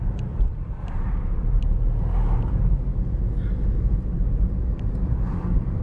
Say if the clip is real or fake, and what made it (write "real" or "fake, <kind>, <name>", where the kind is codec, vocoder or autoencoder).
fake, vocoder, BigVGAN v2